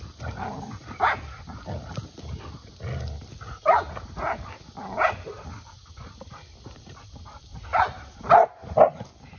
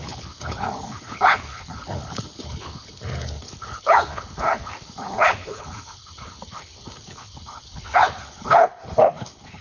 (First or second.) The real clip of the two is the first